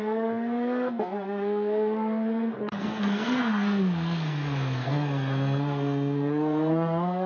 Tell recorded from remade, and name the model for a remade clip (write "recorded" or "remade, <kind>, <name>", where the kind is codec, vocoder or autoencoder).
remade, codec, SNAC